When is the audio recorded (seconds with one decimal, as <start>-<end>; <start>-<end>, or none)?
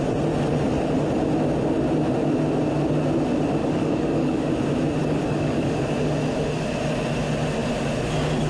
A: 0.0-3.6; 4.5-5.0; 5.7-8.5